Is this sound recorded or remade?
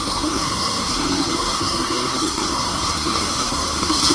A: remade